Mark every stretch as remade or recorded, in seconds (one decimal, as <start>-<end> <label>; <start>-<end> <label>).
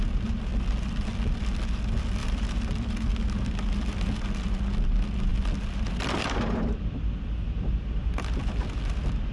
0.0-0.5 recorded; 0.5-1.8 remade; 1.8-2.2 recorded; 2.2-3.8 remade; 3.8-5.3 recorded; 5.3-8.8 remade; 8.8-9.3 recorded